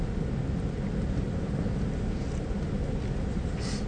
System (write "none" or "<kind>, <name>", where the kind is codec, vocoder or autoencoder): none